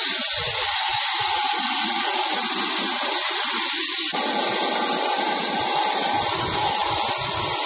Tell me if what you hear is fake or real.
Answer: real